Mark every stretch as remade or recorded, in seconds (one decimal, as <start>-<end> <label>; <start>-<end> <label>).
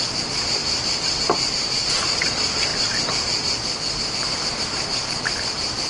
0.0-2.7 remade; 2.7-4.6 recorded; 4.6-5.9 remade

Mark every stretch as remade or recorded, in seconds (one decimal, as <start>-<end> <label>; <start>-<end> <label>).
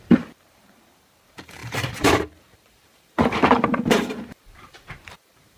0.0-5.6 remade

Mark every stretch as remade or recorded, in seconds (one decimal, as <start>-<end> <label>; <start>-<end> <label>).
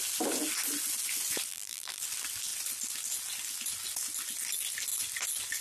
0.0-1.5 recorded; 1.5-2.0 remade; 2.0-5.6 recorded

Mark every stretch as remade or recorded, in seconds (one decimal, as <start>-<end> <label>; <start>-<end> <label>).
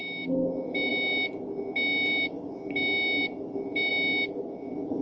0.0-5.0 recorded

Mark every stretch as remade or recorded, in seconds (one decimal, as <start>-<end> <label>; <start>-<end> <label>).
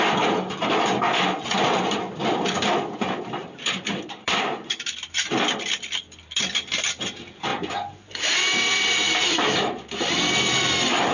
0.0-3.4 recorded; 3.4-5.3 remade; 5.3-7.5 recorded; 7.5-8.3 remade; 8.3-11.1 recorded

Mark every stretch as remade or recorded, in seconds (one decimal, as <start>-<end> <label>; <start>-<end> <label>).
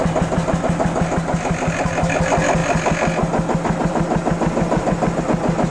0.0-5.7 recorded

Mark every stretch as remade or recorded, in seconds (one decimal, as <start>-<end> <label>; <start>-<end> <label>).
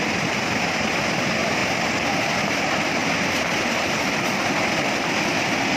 0.0-3.0 recorded; 3.0-5.8 remade